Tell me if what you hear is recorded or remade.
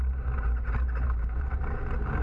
recorded